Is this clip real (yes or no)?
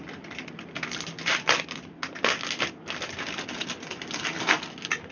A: yes